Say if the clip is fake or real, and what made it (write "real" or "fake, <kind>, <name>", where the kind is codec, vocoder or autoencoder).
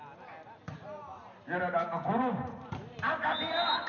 real